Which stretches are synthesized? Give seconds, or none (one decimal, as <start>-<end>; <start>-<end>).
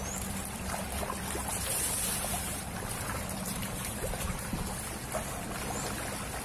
1.4-4.5